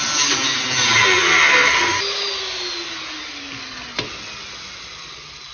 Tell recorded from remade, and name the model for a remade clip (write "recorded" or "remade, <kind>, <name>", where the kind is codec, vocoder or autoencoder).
recorded